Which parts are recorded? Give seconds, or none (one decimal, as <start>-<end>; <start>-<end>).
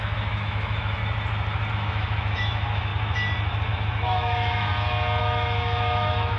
1.0-1.7; 2.9-3.7; 4.7-5.2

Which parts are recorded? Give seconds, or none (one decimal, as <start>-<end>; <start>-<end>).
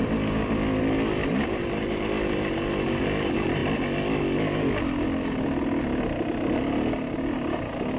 0.0-8.0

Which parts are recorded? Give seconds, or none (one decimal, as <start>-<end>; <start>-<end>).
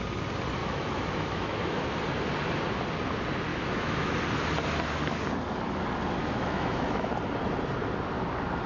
0.0-0.6; 1.9-3.5; 4.1-6.2; 7.1-8.7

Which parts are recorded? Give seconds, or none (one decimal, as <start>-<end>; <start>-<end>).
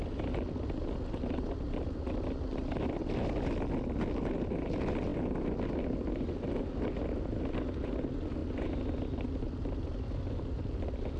0.0-11.2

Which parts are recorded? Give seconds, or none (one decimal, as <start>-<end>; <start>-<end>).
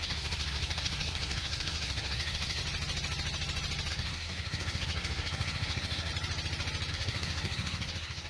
2.6-3.9; 6.1-6.9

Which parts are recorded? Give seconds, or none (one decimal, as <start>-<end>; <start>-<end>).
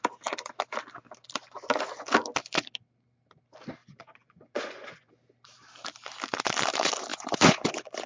0.0-3.8; 5.1-7.1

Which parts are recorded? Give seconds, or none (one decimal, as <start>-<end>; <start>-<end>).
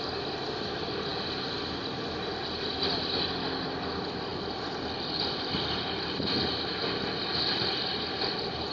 0.0-4.3; 5.8-8.7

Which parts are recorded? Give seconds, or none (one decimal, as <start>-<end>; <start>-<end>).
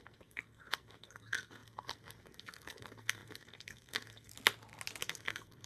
4.3-5.0